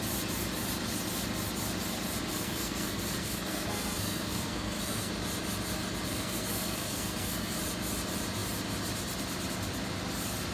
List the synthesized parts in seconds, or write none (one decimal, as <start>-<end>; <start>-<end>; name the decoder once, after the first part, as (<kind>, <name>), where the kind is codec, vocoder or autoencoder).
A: 2.3-5.1 (codec, SNAC); 6.1-7.6